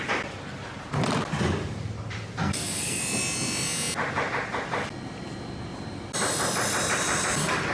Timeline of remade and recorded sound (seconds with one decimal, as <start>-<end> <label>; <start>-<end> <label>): 0.0-2.4 recorded; 2.4-3.0 remade; 3.0-7.7 recorded